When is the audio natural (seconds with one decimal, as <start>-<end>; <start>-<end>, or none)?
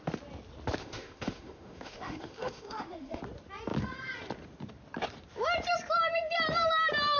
0.0-0.8; 3.2-7.2